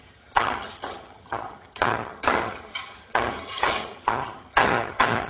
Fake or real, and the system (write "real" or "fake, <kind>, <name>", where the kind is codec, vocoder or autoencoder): fake, vocoder, HiFi-GAN